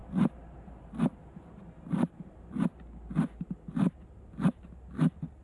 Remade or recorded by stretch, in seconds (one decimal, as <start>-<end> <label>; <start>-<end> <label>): 0.0-2.8 remade; 2.8-5.4 recorded